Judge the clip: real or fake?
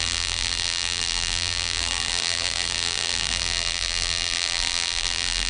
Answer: fake